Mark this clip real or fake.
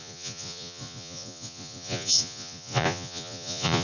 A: fake